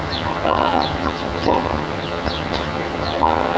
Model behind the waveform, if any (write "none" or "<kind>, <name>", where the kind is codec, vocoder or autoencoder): vocoder, HiFi-GAN